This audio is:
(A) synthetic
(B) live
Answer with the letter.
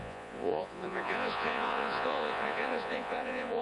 A